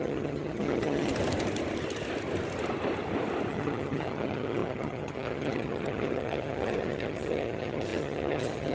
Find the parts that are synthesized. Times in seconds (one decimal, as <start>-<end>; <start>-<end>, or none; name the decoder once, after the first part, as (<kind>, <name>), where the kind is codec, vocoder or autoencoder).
0.0-1.1 (vocoder, HiFi-GAN); 3.5-8.7